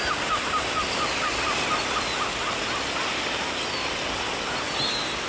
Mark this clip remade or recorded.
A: recorded